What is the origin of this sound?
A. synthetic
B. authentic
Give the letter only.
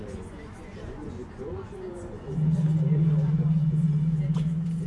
A